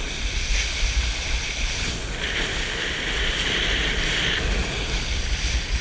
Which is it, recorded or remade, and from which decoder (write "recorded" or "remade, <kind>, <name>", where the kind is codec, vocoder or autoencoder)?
recorded